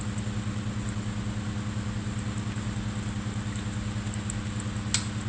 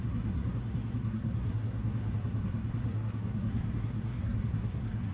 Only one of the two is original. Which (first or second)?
first